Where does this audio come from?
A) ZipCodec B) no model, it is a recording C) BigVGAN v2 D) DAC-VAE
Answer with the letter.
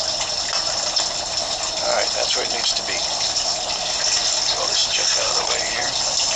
B